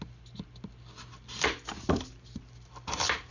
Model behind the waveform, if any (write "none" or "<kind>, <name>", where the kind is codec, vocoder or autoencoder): none